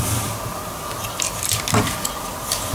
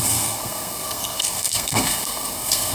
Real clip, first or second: first